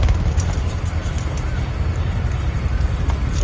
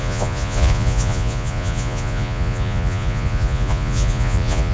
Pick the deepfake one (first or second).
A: second